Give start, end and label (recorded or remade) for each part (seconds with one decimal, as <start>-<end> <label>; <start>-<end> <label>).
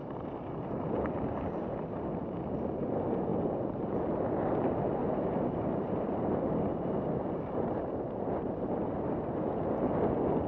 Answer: 0.0-3.3 recorded; 3.3-4.0 remade; 4.0-5.0 recorded; 5.0-6.3 remade; 6.3-10.5 recorded